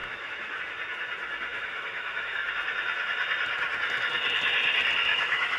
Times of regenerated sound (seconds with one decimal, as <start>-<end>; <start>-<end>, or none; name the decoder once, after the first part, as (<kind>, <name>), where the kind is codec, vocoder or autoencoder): 0.0-0.6 (autoencoder, DAC-VAE); 1.5-2.5; 5.1-5.6

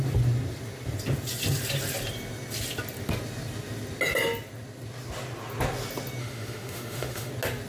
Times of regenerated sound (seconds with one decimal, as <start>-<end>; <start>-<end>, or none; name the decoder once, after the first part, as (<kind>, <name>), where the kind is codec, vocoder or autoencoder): 6.2-7.3 (autoencoder, DAC-VAE)

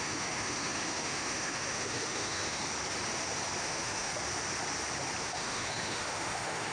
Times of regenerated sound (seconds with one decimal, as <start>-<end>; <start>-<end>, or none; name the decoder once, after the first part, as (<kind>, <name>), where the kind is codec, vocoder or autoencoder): 0.0-2.6 (autoencoder, DAC-VAE); 3.6-4.1; 5.2-6.7

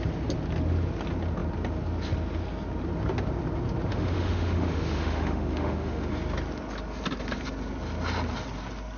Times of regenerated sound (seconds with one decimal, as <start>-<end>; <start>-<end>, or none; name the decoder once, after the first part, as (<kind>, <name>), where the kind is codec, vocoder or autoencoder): 3.9-6.1 (autoencoder, DAC-VAE)

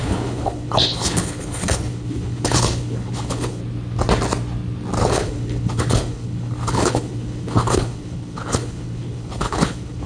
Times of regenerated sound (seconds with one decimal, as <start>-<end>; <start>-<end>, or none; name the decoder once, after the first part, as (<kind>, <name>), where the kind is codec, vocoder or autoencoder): 0.0-3.6 (codec, HILCodec); 5.0-10.1